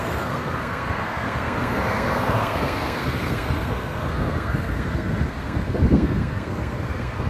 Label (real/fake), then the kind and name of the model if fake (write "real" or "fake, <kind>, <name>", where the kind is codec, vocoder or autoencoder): fake, codec, SNAC